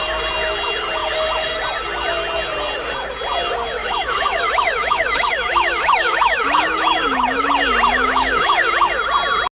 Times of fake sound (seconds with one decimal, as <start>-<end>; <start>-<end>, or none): 3.8-7.5; 7.9-8.6